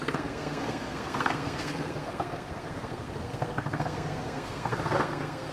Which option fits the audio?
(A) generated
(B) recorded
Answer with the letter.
A